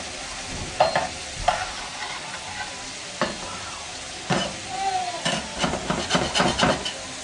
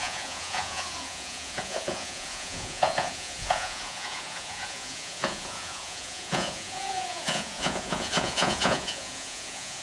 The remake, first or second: second